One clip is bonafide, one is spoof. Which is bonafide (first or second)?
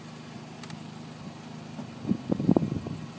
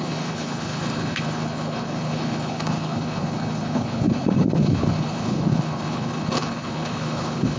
first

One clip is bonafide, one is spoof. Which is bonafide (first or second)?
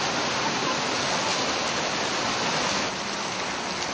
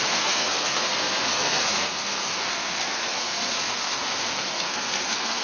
first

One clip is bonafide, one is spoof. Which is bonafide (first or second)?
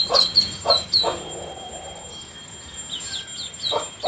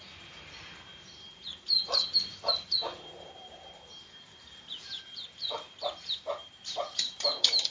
first